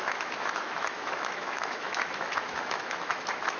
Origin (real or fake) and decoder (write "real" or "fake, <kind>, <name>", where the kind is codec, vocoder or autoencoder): fake, autoencoder, DAC-VAE